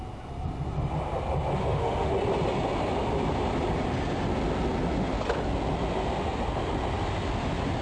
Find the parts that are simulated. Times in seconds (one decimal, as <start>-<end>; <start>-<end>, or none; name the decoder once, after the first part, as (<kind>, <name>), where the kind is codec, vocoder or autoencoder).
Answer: 1.6-2.1 (autoencoder, DAC-VAE)